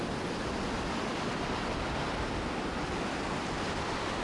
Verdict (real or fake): real